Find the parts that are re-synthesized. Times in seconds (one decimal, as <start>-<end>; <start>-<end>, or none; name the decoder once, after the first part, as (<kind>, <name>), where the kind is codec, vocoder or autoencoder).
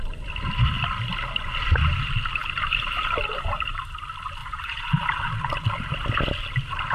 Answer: 2.4-3.9 (vocoder, BigVGAN v2); 4.4-5.3